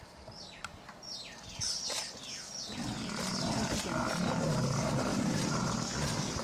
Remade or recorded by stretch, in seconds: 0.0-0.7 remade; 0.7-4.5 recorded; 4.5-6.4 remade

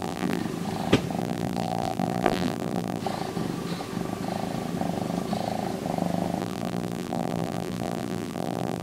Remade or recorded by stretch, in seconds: 0.0-0.4 remade; 0.4-1.2 recorded; 1.2-3.0 remade; 3.0-6.4 recorded; 6.4-8.8 remade

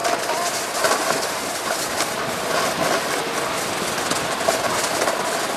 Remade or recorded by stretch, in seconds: 0.0-3.4 remade; 3.4-5.6 recorded